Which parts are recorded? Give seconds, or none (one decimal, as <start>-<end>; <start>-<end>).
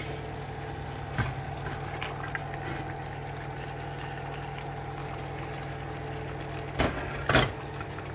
0.0-8.1